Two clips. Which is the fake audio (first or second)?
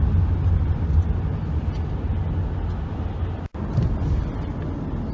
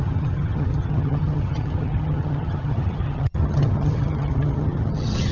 second